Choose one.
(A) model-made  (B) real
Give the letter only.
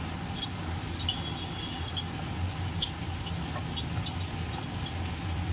B